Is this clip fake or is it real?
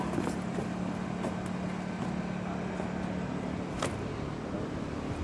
real